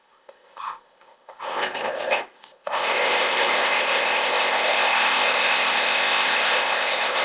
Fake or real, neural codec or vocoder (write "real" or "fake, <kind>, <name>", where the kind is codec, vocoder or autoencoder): fake, codec, ZipCodec